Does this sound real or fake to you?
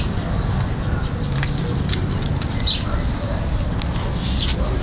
real